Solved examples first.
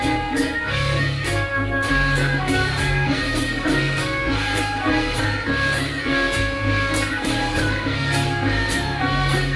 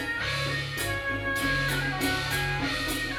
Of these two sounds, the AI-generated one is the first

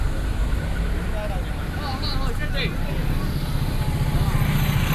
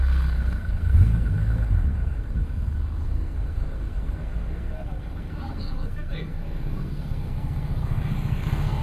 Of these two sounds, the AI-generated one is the second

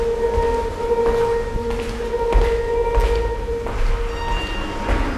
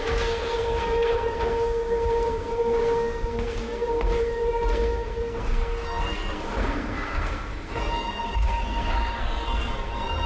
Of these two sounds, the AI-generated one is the second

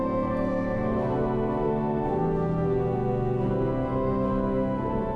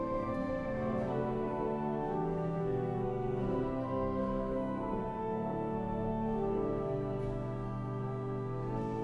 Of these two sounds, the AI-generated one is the second